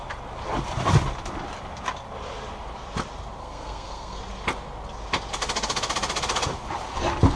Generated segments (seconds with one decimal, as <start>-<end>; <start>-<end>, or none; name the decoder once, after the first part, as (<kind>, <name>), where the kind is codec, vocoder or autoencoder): 3.4-4.2 (codec, SNAC)